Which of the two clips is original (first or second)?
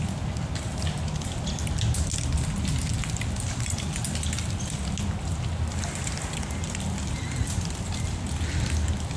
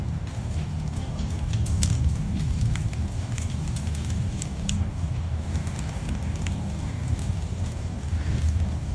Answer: first